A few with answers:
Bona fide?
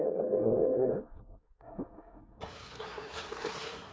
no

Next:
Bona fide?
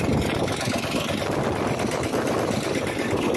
yes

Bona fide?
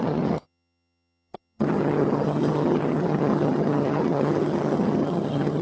no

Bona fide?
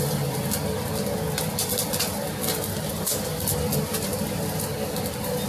yes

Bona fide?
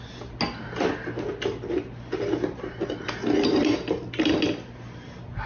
yes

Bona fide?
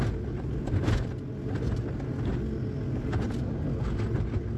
yes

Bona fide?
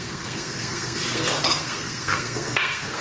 no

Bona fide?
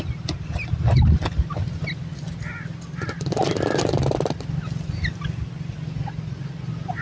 yes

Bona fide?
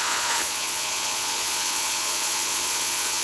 no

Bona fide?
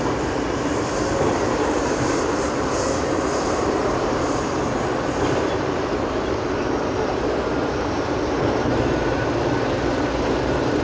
no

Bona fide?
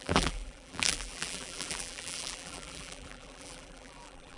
no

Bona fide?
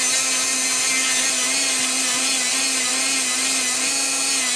yes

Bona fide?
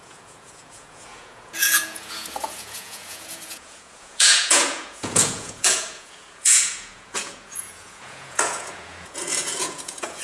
no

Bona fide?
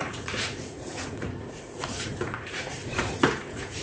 no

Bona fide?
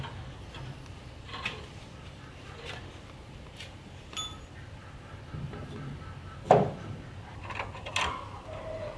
yes